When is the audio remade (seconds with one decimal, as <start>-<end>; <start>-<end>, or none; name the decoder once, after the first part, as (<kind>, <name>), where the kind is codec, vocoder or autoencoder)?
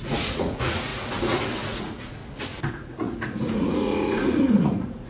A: 0.0-2.2 (vocoder, Vocos); 2.7-5.1